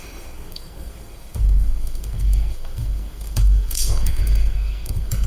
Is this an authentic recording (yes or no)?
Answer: no